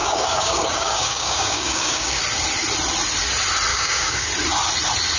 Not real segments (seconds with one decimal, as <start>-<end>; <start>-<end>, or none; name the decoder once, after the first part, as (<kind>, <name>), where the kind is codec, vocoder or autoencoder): 0.0-2.2 (codec, DAC); 3.7-4.3